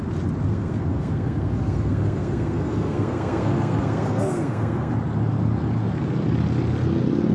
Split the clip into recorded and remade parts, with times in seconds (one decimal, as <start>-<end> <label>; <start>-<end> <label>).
0.0-0.5 recorded; 0.5-4.9 remade; 4.9-7.3 recorded